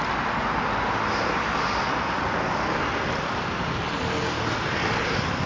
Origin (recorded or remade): recorded